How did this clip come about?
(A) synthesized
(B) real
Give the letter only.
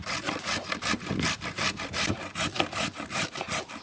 B